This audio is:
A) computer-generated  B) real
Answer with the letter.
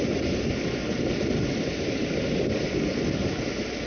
B